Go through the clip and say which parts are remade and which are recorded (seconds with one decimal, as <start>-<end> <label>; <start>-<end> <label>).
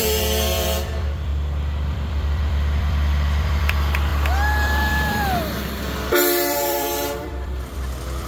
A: 0.0-8.3 remade